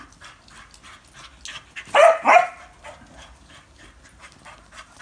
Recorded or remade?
recorded